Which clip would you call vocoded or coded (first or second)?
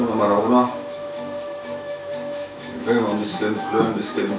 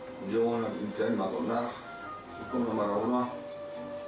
first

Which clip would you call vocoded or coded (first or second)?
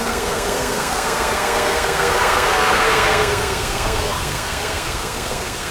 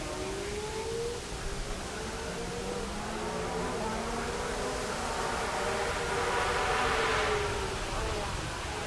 first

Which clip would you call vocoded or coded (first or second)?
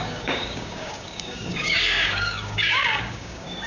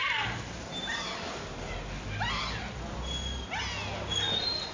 first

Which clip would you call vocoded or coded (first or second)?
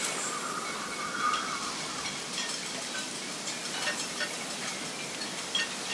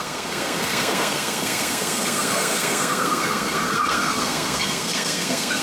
second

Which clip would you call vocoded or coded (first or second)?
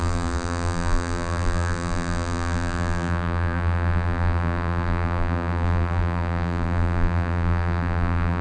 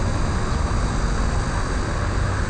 first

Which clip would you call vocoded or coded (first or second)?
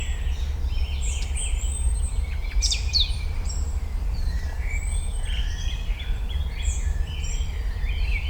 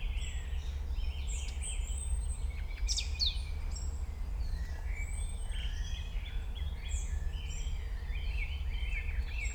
first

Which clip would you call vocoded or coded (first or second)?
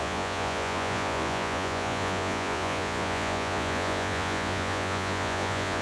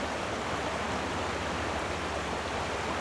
first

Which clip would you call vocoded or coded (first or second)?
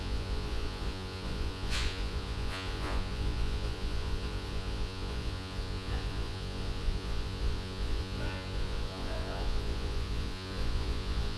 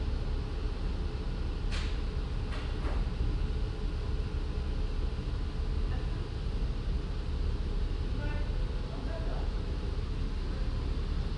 first